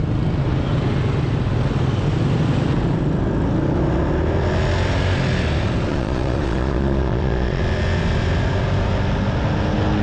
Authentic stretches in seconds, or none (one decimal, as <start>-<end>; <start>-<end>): 0.0-5.9; 7.6-10.0